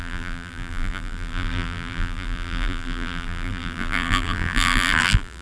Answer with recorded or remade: remade